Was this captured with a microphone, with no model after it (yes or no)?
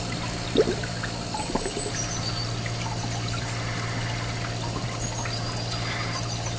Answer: yes